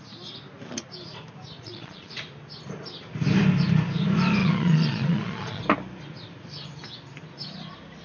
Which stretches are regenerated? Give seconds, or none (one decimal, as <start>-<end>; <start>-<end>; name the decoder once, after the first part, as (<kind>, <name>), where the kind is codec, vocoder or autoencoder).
1.6-2.1 (vocoder, Vocos); 4.4-5.6